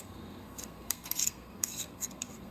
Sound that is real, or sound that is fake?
fake